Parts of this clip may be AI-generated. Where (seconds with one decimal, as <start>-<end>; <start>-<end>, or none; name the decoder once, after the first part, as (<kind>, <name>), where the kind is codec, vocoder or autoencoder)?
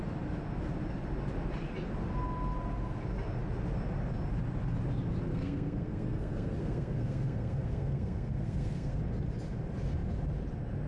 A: 5.3-9.0 (codec, SNAC)